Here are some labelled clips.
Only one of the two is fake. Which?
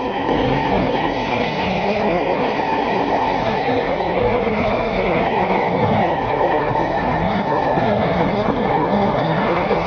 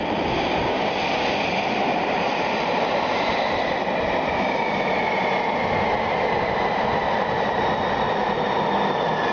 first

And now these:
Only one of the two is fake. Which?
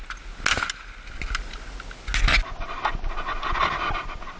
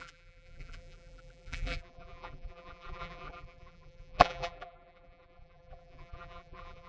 second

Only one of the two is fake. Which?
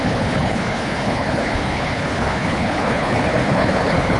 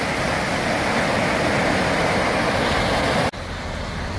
first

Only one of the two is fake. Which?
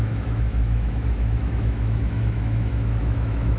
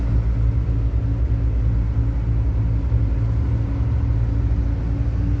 first